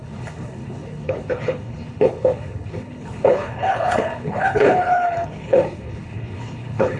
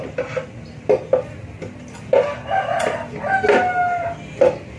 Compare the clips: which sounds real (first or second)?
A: second